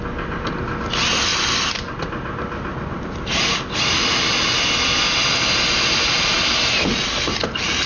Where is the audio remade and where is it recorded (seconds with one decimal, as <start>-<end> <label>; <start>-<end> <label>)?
0.0-7.9 recorded